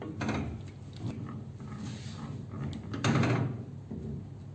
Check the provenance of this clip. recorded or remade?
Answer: recorded